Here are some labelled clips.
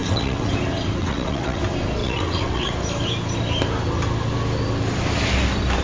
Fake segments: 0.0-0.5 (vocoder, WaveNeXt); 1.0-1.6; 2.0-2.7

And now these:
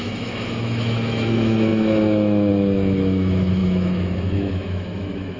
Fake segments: 0.0-5.4 (autoencoder, DAC-VAE)

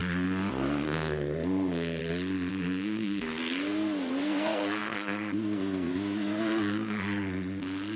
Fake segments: 0.5-2.0 (codec, SNAC); 2.5-8.0

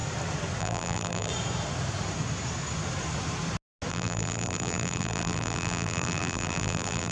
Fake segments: 0.6-1.3 (vocoder, BigVGAN v2); 3.9-7.1

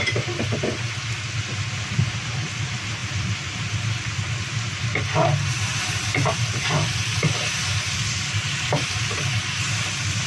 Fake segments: none

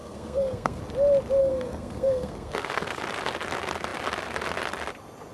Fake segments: 0.0-0.8 (codec, SNAC); 1.4-3.0